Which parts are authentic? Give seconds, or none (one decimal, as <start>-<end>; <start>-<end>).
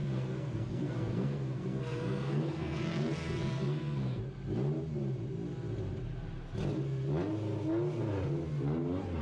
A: 4.2-9.2